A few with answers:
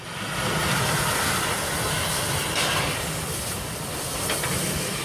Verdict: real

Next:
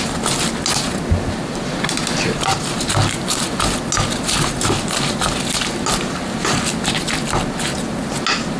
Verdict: real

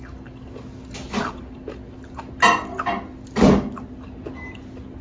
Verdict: real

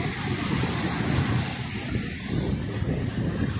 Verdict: real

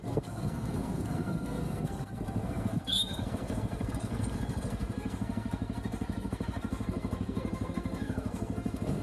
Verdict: fake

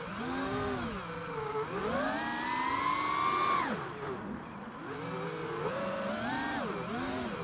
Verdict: real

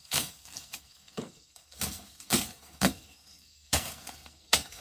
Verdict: fake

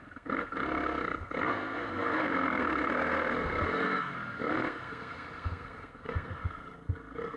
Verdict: fake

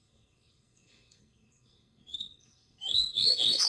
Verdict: fake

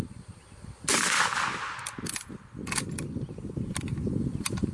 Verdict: real